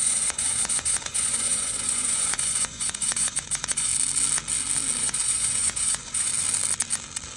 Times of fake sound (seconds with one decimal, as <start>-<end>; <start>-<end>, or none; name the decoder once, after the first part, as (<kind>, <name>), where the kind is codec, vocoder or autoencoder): 0.0-3.9 (vocoder, Vocos); 5.0-6.3